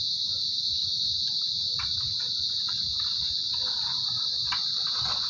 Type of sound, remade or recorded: recorded